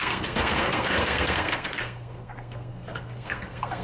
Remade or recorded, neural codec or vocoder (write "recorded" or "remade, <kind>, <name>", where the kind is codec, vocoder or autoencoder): remade, codec, SNAC